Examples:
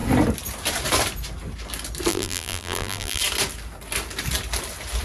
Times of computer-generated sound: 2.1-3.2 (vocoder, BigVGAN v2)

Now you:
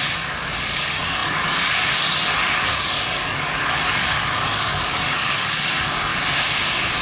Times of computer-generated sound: 0.0-6.1 (codec, DAC)

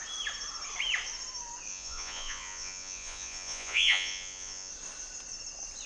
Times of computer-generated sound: 1.7-4.7 (vocoder, Vocos)